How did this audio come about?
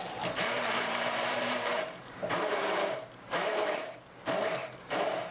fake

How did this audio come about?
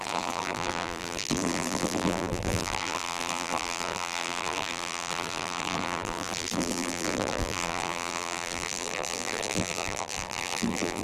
fake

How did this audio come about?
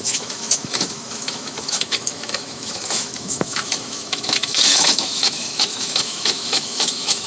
fake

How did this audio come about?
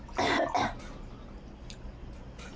real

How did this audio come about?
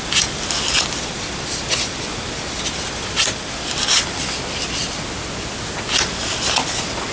real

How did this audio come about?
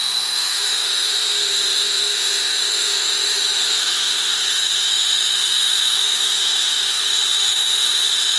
fake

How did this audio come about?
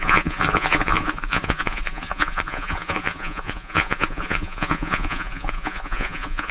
fake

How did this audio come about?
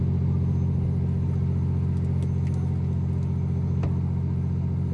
real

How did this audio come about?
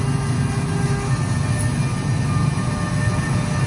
real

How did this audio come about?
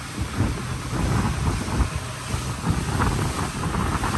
real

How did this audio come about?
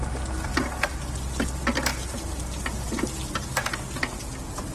real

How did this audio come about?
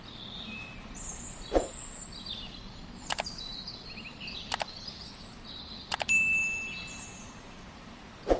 real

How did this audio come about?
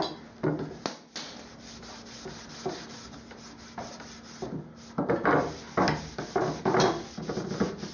real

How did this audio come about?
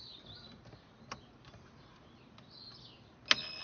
real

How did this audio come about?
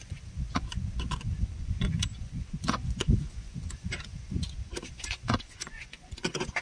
fake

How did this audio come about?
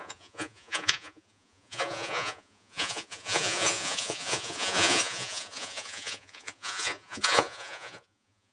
fake